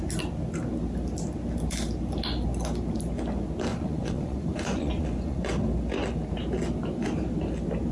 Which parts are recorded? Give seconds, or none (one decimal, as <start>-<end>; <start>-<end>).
0.0-3.7; 5.5-7.9